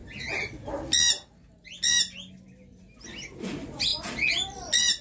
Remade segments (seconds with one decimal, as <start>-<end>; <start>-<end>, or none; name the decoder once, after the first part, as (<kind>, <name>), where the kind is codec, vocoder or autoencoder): none